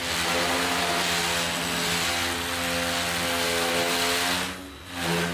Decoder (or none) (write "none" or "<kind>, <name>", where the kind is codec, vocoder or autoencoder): none